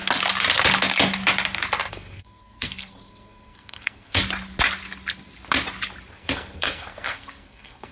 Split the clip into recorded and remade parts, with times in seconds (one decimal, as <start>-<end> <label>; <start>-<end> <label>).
0.0-1.9 recorded; 1.9-4.2 remade; 4.2-6.1 recorded; 6.1-7.9 remade